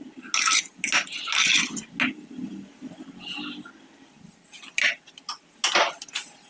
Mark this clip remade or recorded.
recorded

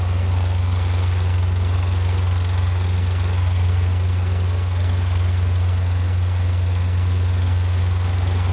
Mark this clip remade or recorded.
remade